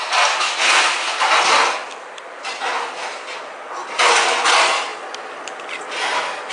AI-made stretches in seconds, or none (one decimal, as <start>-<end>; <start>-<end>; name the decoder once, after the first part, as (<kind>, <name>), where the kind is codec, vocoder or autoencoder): none